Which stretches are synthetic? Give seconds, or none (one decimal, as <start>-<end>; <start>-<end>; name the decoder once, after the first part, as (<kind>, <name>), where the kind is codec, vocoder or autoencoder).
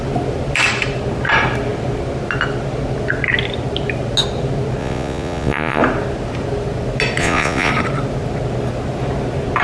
4.8-5.8 (vocoder, Vocos); 7.2-7.7